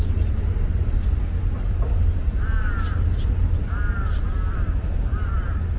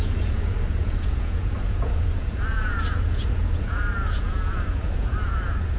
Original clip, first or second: first